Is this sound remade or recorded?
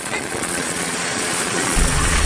remade